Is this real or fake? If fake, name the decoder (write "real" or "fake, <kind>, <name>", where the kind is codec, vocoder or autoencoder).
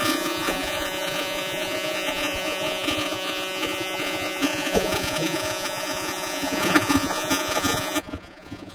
fake, vocoder, Vocos